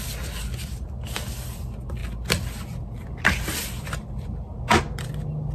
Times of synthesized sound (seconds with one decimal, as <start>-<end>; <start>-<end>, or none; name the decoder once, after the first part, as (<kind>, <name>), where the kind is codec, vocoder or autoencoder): none